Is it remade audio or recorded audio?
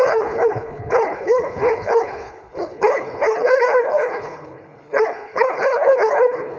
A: remade